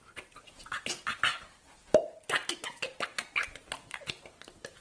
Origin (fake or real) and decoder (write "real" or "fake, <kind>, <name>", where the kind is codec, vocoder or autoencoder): real